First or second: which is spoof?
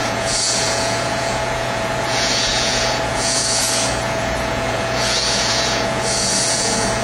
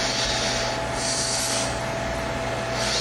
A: first